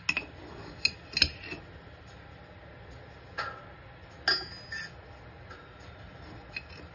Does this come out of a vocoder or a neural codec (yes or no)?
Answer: no